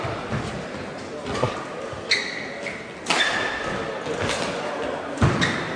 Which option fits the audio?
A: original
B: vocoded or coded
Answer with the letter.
A